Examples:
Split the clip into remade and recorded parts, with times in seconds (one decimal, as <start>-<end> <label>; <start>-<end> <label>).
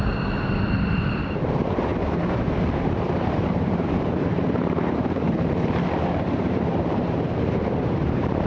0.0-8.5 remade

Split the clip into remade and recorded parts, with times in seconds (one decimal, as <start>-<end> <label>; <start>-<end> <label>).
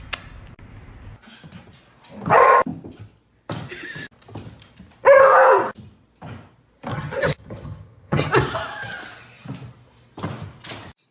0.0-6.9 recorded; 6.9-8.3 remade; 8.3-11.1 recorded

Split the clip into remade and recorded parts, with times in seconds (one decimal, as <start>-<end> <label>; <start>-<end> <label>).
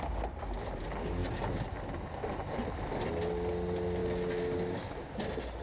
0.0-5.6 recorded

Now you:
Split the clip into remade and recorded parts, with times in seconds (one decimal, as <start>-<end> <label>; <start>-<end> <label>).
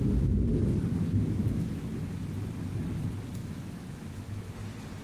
0.0-0.9 recorded; 0.9-2.2 remade; 2.2-3.4 recorded; 3.4-4.6 remade; 4.6-5.0 recorded